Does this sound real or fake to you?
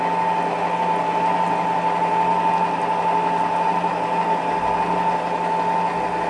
real